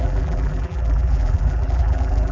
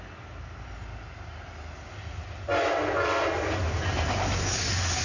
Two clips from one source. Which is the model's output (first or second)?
first